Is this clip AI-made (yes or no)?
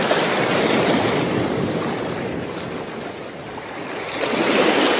no